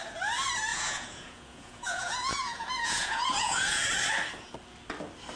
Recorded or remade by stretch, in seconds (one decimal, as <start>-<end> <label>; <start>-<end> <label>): 0.0-0.7 recorded; 0.7-3.9 remade; 3.9-5.4 recorded